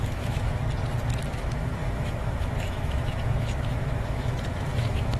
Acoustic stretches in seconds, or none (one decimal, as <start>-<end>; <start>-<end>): 0.6-1.3